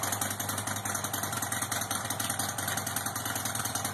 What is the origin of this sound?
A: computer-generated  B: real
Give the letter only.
B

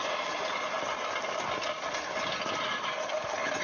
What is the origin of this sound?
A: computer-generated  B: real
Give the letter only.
B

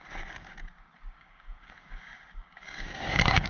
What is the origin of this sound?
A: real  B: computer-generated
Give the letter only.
B